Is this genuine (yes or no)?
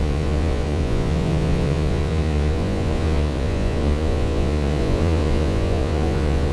no